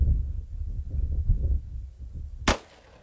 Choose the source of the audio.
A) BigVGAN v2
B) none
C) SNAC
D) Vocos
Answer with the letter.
B